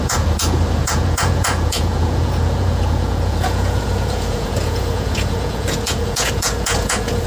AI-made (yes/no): yes